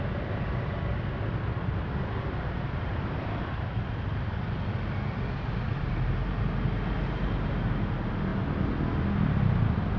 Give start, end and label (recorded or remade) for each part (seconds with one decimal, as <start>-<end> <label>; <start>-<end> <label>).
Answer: 0.0-10.0 recorded